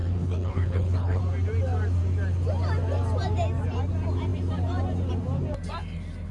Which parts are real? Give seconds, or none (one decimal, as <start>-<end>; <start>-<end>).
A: 1.2-6.3